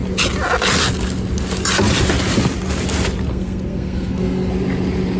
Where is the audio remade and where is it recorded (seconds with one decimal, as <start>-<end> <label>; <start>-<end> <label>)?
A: 0.0-3.3 recorded; 3.3-4.5 remade; 4.5-5.2 recorded